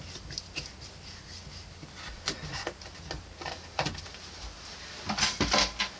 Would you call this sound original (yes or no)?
yes